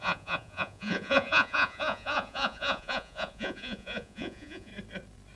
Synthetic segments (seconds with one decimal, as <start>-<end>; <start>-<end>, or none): 0.0-4.7